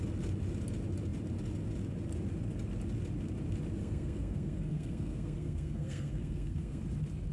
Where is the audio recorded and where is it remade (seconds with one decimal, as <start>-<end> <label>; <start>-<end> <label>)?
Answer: 0.0-3.8 recorded; 3.8-6.8 remade; 6.8-7.3 recorded